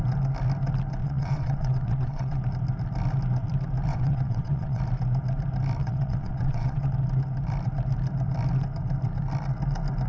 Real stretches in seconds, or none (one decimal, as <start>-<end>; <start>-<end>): 0.0-1.0; 2.4-3.9; 4.8-5.8; 6.9-10.1

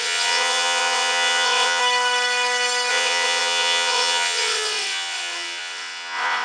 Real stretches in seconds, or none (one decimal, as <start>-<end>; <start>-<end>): 1.8-2.9

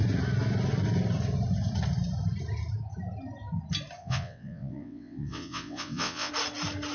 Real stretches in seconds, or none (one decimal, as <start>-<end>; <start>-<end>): 0.0-4.0; 6.3-6.9

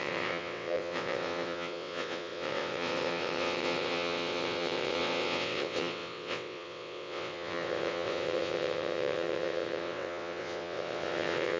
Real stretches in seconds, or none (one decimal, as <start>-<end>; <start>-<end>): none